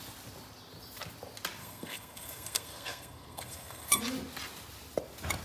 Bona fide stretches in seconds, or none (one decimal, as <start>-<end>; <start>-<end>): 0.0-1.6; 4.0-5.4